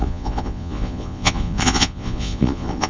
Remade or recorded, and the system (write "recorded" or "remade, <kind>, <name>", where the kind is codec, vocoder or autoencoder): remade, vocoder, Vocos